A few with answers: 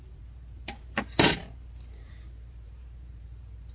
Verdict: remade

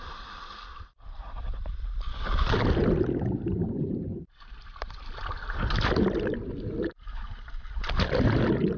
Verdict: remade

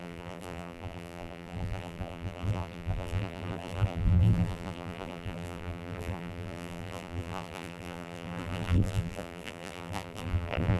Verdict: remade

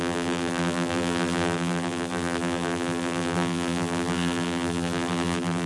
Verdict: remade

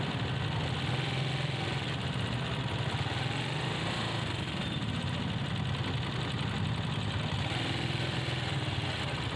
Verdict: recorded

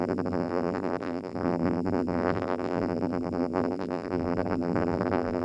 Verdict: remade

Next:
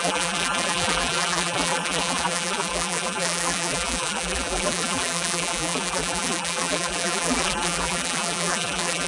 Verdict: remade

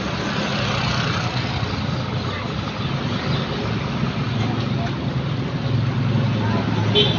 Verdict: recorded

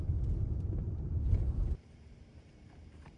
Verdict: remade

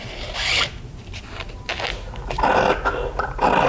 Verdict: recorded